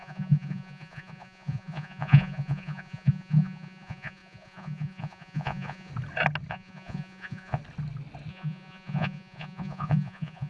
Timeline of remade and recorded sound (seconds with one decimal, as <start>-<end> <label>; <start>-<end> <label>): 0.0-5.9 remade; 5.9-6.5 recorded; 6.5-7.6 remade; 7.6-8.3 recorded; 8.3-10.5 remade